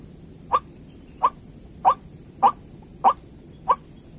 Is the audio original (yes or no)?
yes